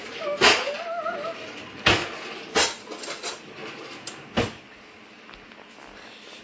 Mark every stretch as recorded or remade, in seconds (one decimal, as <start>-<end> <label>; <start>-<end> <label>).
0.0-6.4 recorded